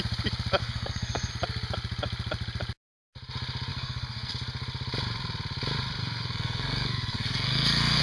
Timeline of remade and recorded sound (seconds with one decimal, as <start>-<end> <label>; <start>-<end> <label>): 0.0-0.6 recorded; 0.6-1.3 remade; 1.3-3.7 recorded; 3.7-4.3 remade; 4.3-6.0 recorded; 6.0-8.0 remade

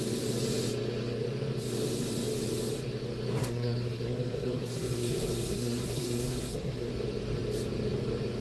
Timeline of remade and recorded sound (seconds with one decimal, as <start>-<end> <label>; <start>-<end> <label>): 0.0-3.4 recorded; 3.4-6.9 remade; 6.9-8.4 recorded

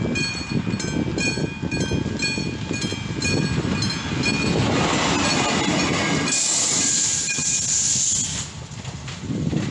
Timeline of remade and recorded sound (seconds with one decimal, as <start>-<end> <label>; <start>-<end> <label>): 0.0-9.7 recorded

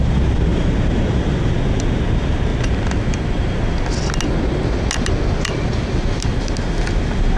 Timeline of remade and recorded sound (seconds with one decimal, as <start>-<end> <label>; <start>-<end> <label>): 0.0-0.5 recorded; 0.5-1.5 remade; 1.5-7.4 recorded